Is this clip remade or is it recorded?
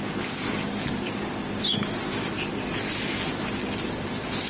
recorded